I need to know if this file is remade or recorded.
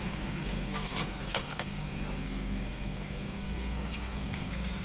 remade